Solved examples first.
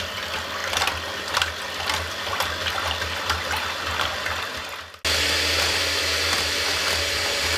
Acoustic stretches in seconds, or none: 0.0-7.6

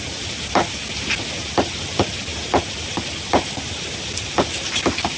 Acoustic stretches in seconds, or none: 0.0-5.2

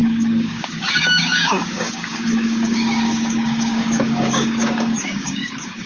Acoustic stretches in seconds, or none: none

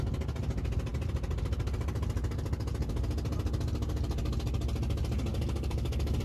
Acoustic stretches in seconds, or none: 0.0-5.3